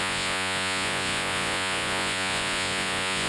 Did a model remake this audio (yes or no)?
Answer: yes